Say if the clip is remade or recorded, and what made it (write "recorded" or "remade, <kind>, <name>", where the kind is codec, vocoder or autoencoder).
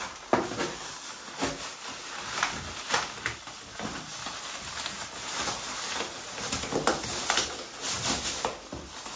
recorded